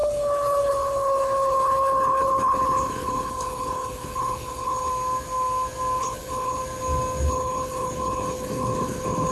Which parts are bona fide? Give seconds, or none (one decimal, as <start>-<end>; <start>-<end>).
4.9-6.0; 6.6-7.3

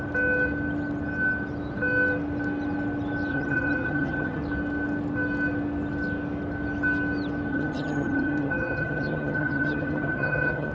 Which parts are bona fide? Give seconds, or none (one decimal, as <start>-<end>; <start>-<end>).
0.0-3.3; 4.4-7.5